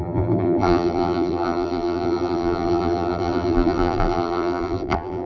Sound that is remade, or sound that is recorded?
remade